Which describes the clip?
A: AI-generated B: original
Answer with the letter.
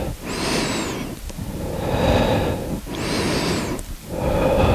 B